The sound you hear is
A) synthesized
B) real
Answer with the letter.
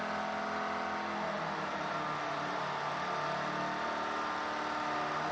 B